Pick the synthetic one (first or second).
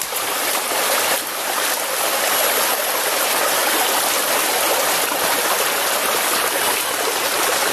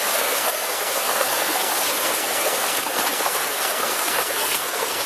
second